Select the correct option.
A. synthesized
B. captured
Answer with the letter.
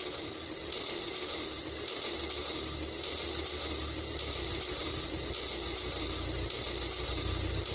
B